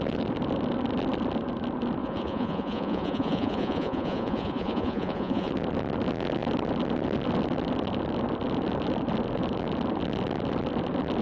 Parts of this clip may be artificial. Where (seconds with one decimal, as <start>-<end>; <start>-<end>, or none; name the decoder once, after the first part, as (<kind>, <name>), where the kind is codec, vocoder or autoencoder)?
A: 2.0-5.5 (vocoder, Vocos)